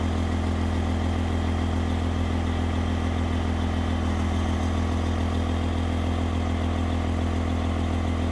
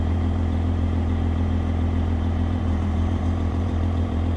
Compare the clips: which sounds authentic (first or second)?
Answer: first